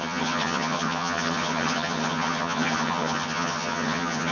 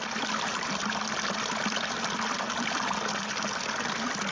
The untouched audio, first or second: second